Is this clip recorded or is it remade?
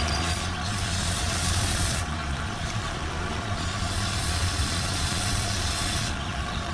remade